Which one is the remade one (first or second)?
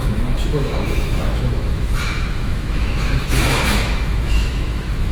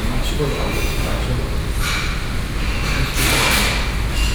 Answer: first